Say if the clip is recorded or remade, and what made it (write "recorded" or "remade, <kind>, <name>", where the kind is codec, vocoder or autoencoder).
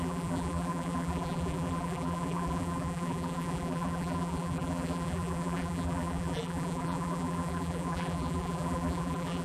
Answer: remade, vocoder, BigVGAN v2